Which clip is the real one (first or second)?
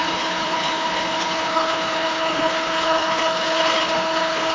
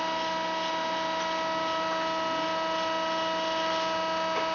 second